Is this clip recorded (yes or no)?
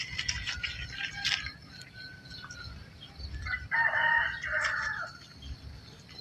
yes